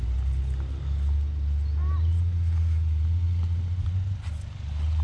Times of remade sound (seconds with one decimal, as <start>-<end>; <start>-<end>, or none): none